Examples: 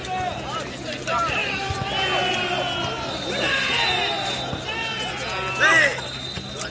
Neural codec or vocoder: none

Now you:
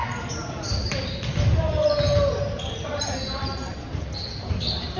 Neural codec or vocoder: none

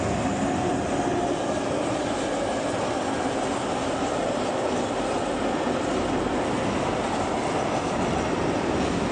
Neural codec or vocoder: none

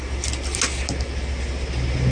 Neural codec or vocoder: none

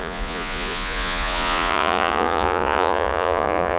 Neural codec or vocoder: vocoder, Vocos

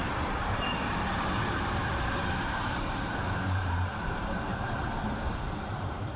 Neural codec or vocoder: vocoder, BigVGAN v2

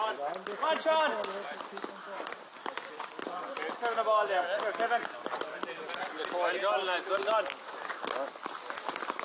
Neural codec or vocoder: none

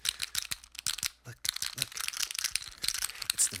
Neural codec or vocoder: none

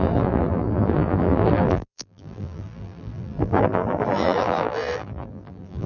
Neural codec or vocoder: vocoder, BigVGAN v2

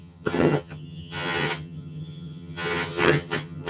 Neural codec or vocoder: vocoder, HiFi-GAN